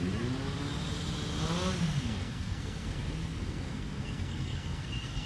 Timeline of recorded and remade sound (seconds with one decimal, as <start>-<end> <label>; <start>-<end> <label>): 0.0-1.8 recorded; 1.8-5.3 remade